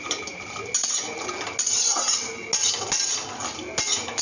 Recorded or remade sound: recorded